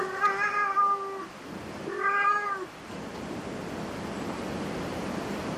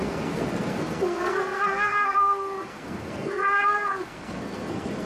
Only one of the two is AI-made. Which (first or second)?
second